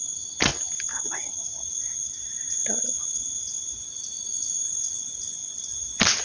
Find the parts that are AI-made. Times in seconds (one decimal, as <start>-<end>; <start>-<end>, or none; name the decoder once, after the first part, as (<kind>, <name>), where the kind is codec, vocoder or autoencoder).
none